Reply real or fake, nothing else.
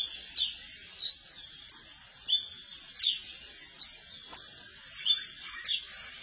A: real